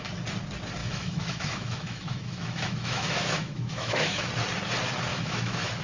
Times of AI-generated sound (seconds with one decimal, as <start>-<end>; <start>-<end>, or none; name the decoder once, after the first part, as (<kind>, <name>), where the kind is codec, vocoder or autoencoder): 0.8-4.3 (autoencoder, DAC-VAE); 5.1-5.8